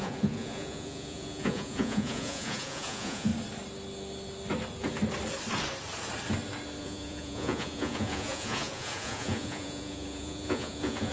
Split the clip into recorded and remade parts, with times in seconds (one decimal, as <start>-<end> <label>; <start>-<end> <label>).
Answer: 0.0-3.3 remade; 3.3-6.8 recorded; 6.8-11.1 remade

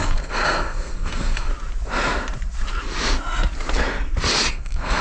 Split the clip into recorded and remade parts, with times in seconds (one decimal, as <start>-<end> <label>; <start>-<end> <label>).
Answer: 0.0-1.5 remade; 1.5-4.5 recorded; 4.5-5.0 remade

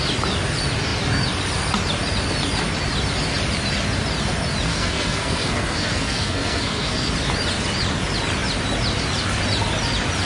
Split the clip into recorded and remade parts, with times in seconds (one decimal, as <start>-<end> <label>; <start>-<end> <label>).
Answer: 0.0-4.7 recorded; 4.7-7.1 remade; 7.1-10.3 recorded

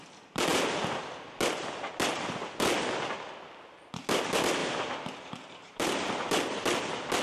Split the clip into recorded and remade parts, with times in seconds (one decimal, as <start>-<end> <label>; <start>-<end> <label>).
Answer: 0.0-4.6 recorded; 4.6-5.9 remade; 5.9-7.2 recorded

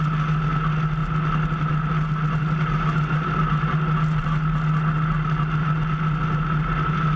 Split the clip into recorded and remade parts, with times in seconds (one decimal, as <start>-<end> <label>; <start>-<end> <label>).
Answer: 0.0-7.2 recorded

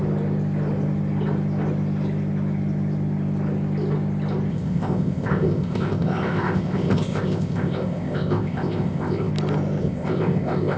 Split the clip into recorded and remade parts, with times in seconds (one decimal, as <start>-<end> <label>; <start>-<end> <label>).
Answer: 0.0-4.5 recorded; 4.5-9.3 remade; 9.3-9.8 recorded; 9.8-10.8 remade

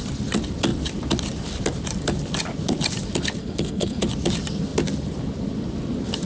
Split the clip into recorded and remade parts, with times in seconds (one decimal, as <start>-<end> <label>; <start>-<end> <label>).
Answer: 0.0-3.4 recorded; 3.4-4.0 remade; 4.0-6.2 recorded

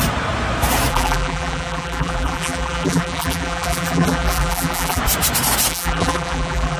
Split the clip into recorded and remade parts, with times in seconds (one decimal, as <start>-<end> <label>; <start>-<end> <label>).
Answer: 0.0-0.9 recorded; 0.9-5.0 remade; 5.0-5.7 recorded; 5.7-6.8 remade